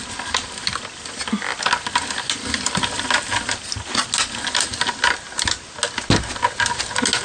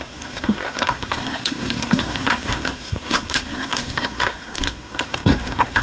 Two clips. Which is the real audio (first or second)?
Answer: first